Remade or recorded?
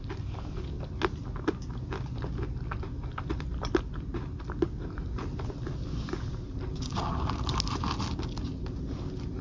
recorded